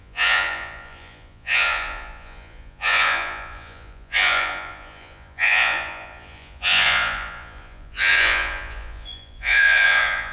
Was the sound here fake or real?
fake